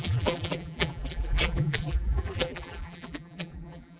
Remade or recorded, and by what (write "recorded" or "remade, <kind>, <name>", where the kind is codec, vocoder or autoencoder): remade, vocoder, BigVGAN v2